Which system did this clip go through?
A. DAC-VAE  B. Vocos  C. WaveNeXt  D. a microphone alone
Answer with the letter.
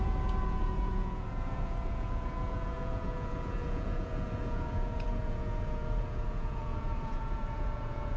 B